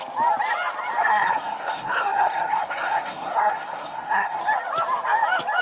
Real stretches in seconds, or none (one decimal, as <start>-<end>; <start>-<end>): 0.0-1.0; 4.4-5.6